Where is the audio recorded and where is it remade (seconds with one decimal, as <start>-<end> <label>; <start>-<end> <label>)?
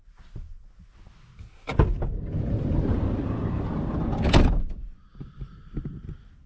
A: 0.0-6.5 recorded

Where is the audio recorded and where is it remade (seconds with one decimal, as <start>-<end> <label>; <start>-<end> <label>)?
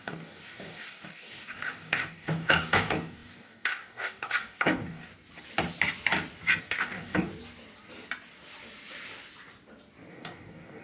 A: 0.0-5.1 remade; 5.1-6.6 recorded; 6.6-7.3 remade; 7.3-10.1 recorded; 10.1-10.8 remade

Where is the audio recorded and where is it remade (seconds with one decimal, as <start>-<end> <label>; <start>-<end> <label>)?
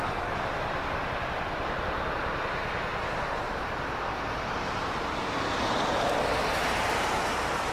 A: 0.0-7.7 recorded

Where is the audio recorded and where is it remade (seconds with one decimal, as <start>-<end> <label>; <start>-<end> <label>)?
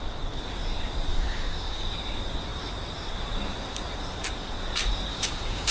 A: 0.0-1.1 recorded; 1.1-1.8 remade; 1.8-5.1 recorded; 5.1-5.7 remade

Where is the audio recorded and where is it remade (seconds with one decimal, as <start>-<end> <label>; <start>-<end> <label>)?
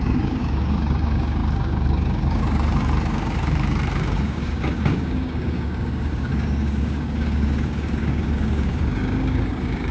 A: 0.0-9.9 remade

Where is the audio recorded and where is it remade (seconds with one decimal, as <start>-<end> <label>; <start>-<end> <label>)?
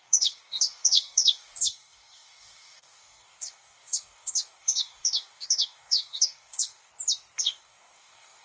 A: 0.0-6.9 remade; 6.9-7.4 recorded; 7.4-8.4 remade